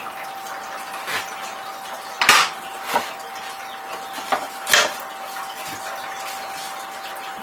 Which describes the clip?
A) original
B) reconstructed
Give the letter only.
A